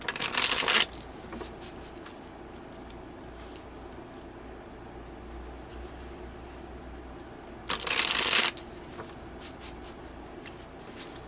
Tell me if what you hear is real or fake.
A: real